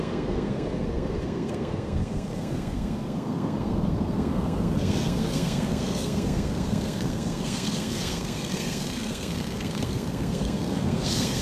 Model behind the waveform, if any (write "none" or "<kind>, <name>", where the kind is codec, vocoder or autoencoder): codec, SNAC